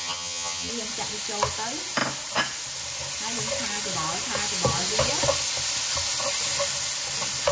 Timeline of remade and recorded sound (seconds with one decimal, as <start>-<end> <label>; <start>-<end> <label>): 0.0-0.7 remade; 0.7-7.5 recorded